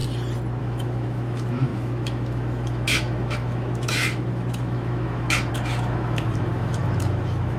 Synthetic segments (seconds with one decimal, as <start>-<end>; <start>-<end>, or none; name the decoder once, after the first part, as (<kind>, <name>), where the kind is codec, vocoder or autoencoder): 0.6-7.6 (autoencoder, DAC-VAE)